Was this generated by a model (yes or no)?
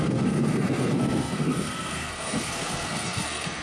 yes